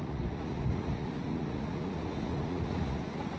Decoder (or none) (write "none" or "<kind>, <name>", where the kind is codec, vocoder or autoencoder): vocoder, Vocos